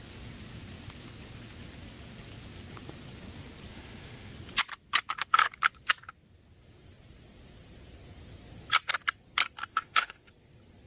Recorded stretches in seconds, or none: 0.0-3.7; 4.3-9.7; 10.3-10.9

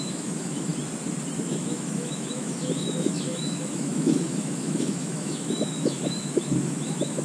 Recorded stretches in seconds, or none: 0.7-1.4

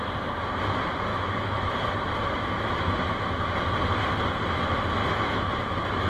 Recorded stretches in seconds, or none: 0.0-1.1; 3.4-5.0

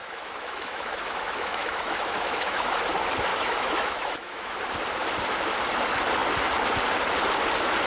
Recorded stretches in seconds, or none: 2.8-3.3; 4.5-7.9

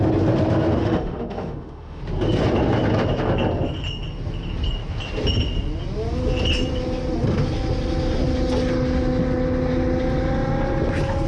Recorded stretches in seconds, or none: 0.0-0.8; 2.0-11.3

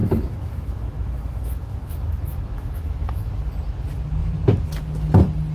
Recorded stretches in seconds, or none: 3.3-5.5

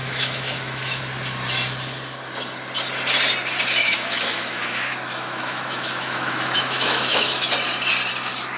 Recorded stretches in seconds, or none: 1.0-3.8; 7.5-8.6